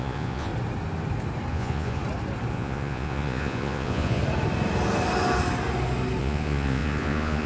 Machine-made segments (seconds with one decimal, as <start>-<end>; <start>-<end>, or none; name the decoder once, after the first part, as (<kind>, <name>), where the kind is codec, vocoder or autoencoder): 0.0-0.5 (vocoder, Vocos); 1.5-2.0; 2.5-4.2; 6.2-7.5